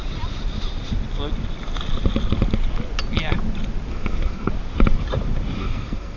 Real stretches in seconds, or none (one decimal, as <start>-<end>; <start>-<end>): 0.0-3.9; 4.5-5.6